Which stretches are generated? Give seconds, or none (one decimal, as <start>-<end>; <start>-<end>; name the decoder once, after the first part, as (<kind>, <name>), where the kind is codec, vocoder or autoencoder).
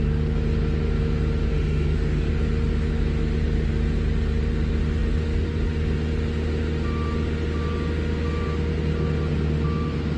1.5-2.3 (autoencoder, DAC-VAE)